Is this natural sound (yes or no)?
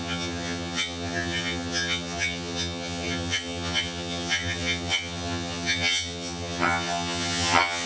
no